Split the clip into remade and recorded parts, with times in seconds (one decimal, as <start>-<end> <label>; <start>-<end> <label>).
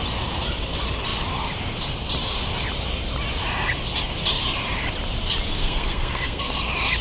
0.0-5.6 recorded; 5.6-6.6 remade; 6.6-7.0 recorded